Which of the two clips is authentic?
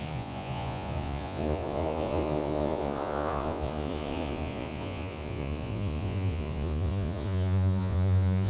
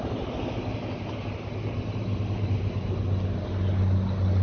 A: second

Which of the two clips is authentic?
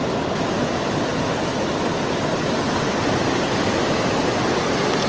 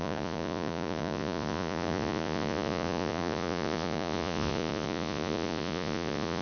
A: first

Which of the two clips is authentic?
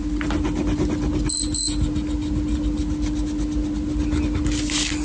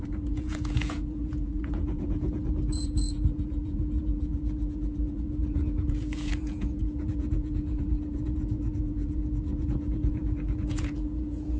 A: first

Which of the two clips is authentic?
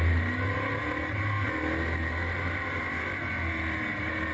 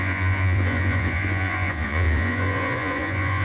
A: first